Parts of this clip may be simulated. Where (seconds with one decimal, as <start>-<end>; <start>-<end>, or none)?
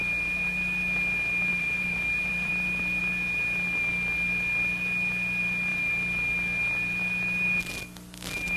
1.5-2.5